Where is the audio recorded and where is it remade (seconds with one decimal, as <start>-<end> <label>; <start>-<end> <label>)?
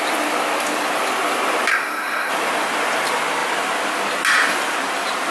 0.0-1.7 recorded; 1.7-2.3 remade; 2.3-5.3 recorded